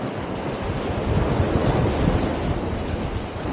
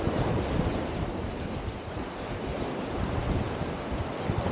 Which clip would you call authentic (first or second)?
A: first